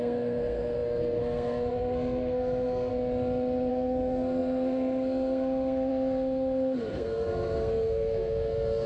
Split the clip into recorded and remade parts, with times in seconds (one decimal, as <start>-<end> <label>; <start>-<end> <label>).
0.0-2.9 remade; 2.9-3.7 recorded; 3.7-8.9 remade